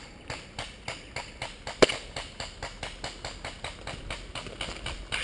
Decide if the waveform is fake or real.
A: real